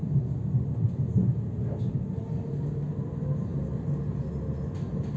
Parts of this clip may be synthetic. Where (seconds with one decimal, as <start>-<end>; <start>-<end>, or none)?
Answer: none

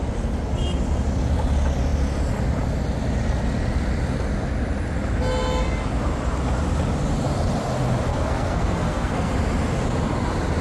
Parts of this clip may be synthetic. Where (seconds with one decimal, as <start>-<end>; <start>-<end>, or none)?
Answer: 8.1-9.3

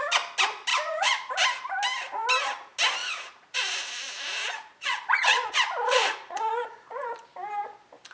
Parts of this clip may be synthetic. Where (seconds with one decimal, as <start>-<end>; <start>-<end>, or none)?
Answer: 0.7-1.3; 3.0-5.5; 5.9-7.1

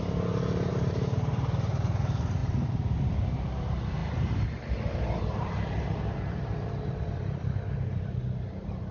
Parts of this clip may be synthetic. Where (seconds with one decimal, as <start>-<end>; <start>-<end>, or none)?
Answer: 0.7-2.0; 4.0-8.1

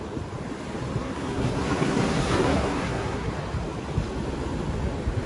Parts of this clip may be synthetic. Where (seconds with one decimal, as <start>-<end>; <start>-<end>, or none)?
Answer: 1.0-3.3

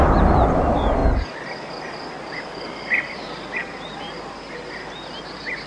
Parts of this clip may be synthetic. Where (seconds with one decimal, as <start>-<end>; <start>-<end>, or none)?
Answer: 0.0-1.0; 1.7-3.6; 5.2-5.7